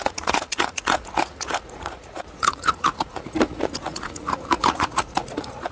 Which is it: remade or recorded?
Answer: remade